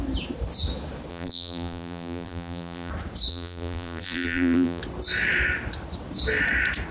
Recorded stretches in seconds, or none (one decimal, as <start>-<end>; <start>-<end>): 0.0-1.1; 2.9-3.3; 4.8-6.9

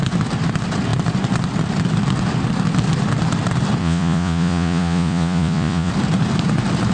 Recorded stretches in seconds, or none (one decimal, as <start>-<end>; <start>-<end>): 0.0-3.8; 5.9-6.9

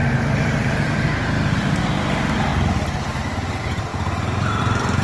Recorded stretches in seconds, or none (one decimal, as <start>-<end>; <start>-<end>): 2.5-3.2

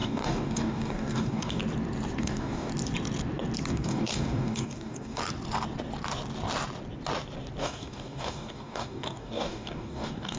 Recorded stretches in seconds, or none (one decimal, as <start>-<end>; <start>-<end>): 1.6-2.2; 2.7-3.7; 5.2-7.6

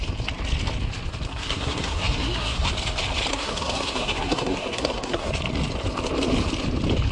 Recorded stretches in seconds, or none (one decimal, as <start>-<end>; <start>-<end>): 0.0-1.3; 2.7-3.3; 5.3-7.1

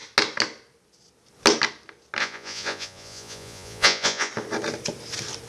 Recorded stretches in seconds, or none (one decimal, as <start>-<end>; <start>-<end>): 0.0-2.2; 4.3-5.5

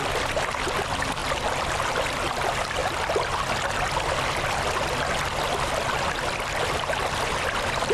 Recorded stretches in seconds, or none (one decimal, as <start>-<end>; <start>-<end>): 1.2-2.0; 2.8-7.4